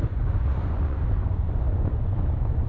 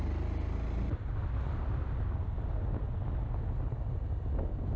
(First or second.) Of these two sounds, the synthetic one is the first